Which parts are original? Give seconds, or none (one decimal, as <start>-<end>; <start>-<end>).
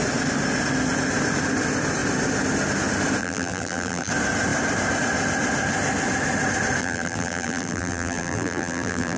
0.0-3.2; 4.1-6.8